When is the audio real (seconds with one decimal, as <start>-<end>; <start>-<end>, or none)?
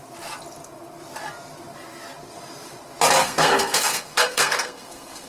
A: 0.0-3.2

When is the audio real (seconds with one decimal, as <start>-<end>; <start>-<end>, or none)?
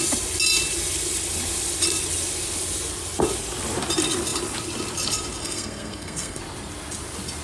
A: 0.0-5.4; 6.4-7.4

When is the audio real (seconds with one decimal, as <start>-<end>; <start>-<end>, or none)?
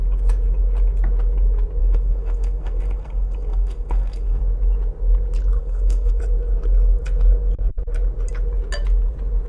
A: 0.0-1.8; 4.4-5.6; 6.2-9.5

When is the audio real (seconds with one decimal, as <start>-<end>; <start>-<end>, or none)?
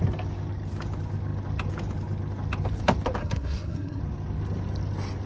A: 0.0-3.2; 4.0-5.3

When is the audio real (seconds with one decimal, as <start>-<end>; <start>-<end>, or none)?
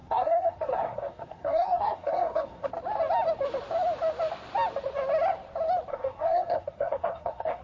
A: 2.7-5.9